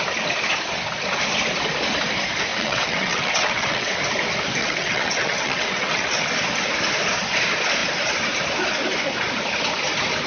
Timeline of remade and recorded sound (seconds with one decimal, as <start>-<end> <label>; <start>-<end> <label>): 0.0-2.5 recorded; 2.5-4.0 remade; 4.0-4.6 recorded; 4.6-6.2 remade; 6.2-10.3 recorded